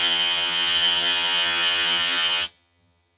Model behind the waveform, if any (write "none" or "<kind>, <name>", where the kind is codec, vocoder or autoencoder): vocoder, HiFi-GAN